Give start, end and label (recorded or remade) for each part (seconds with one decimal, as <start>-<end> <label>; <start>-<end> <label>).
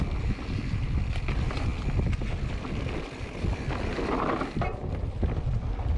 0.0-6.0 recorded